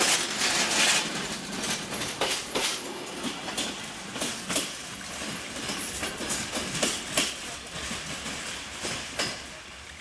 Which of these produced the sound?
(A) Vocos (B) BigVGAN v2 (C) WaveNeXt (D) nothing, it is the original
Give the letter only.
D